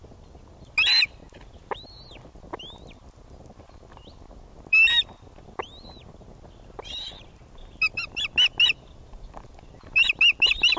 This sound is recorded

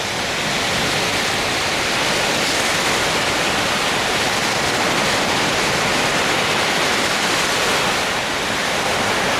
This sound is recorded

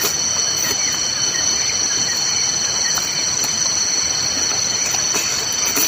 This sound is recorded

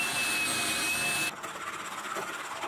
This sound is recorded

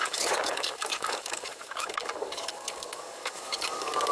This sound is remade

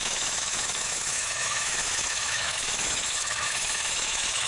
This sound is remade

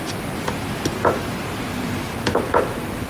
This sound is recorded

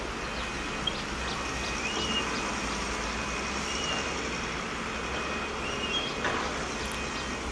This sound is recorded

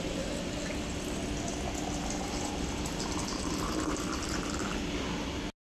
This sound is recorded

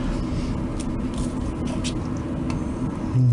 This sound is recorded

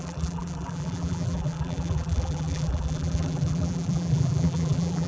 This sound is remade